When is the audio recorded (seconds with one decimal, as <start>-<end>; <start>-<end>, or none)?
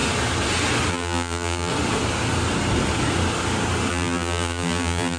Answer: 0.0-0.9; 1.7-3.9